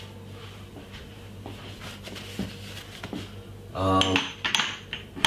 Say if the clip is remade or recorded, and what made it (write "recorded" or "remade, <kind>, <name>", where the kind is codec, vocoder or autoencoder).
recorded